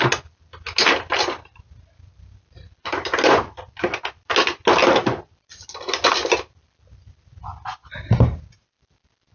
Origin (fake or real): real